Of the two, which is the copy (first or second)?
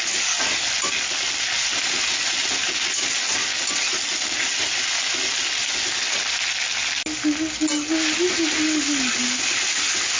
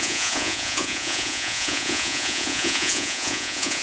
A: second